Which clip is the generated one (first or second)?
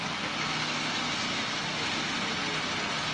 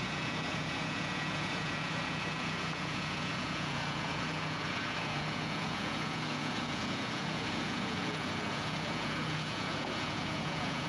second